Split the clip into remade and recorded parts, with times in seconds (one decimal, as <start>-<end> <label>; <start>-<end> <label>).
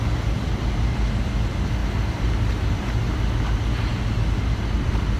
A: 0.0-1.8 recorded; 1.8-3.0 remade; 3.0-3.9 recorded; 3.9-5.2 remade